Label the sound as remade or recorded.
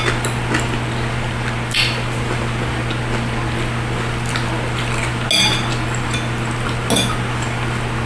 recorded